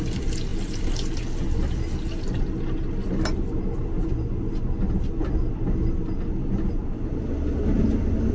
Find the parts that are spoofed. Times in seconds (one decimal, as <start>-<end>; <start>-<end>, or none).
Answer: none